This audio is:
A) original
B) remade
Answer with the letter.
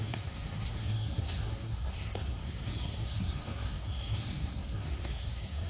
B